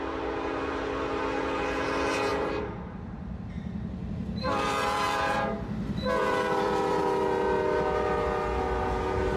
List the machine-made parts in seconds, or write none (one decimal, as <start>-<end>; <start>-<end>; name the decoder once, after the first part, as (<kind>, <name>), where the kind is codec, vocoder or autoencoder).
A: 2.3-7.0 (vocoder, BigVGAN v2)